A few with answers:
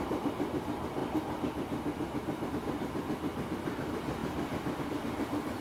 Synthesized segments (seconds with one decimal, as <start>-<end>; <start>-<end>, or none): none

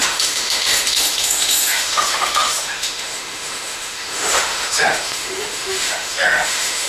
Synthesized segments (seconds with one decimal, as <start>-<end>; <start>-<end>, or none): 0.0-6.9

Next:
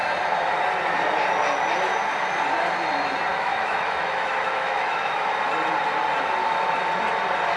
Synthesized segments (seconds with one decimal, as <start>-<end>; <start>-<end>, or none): 3.3-5.3

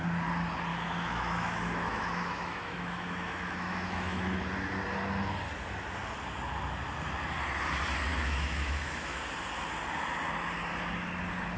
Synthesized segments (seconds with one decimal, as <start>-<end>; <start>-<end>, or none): 0.7-4.4; 8.1-9.2

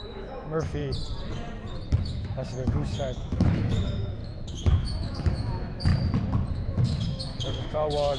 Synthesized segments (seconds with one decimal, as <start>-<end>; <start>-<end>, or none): 0.0-0.8; 2.0-5.9; 6.5-8.2